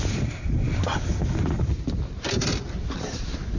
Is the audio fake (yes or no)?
no